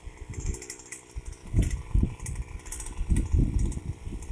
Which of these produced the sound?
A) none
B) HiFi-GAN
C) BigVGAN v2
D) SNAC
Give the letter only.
A